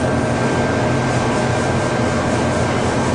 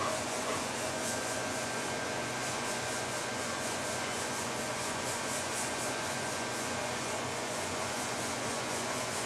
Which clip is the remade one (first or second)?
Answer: second